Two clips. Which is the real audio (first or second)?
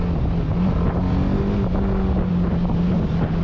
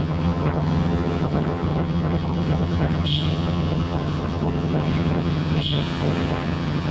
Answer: first